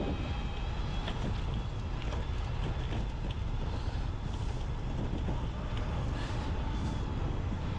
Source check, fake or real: real